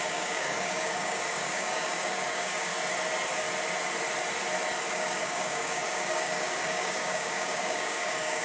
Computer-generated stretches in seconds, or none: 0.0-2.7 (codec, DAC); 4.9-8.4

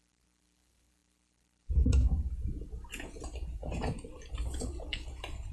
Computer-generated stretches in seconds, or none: 0.0-5.5 (vocoder, BigVGAN v2)

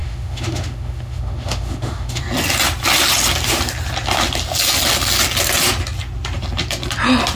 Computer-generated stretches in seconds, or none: 0.0-2.2 (autoencoder, DAC-VAE)

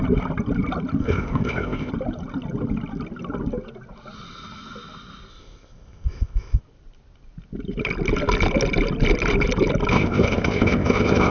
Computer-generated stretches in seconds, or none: 1.0-1.9 (codec, ZipCodec); 5.3-6.6; 9.9-11.3

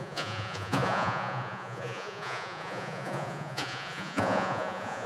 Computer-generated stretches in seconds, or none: 0.0-5.1 (vocoder, Vocos)

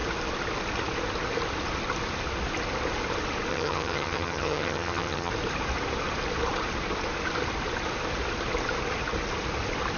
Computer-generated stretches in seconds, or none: 3.5-5.3 (vocoder, HiFi-GAN)

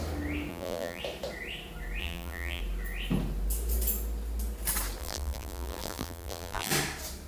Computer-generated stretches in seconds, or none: 0.5-1.0 (vocoder, BigVGAN v2); 2.0-2.6; 5.0-6.7